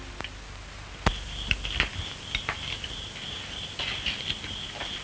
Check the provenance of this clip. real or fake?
real